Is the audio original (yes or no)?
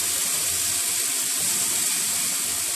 no